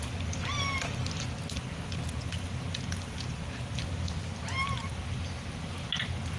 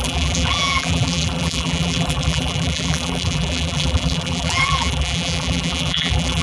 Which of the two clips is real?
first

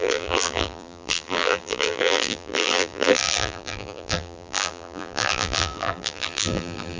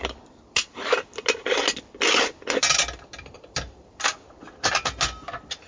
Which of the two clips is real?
second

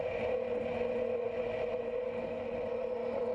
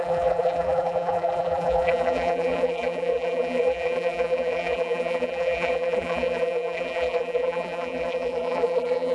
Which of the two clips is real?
first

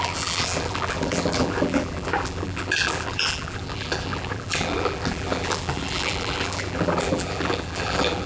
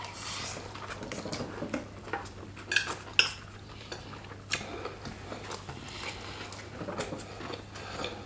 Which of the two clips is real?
second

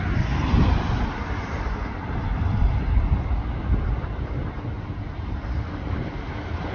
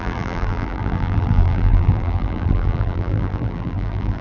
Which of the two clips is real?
first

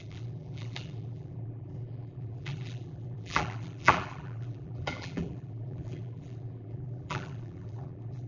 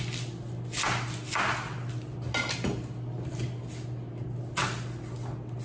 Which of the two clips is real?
second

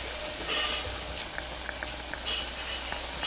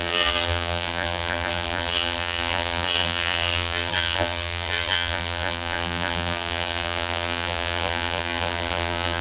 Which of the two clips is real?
first